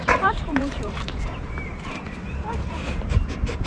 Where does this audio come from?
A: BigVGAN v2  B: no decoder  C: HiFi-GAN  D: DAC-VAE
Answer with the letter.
A